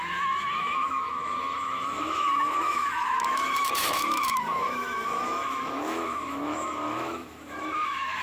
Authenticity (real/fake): fake